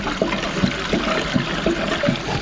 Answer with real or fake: real